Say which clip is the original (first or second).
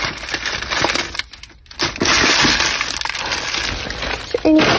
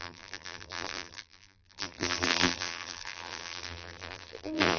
first